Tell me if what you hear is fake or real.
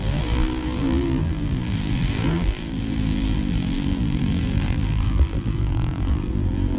fake